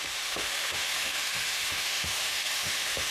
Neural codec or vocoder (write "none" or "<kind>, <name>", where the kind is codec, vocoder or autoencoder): autoencoder, DAC-VAE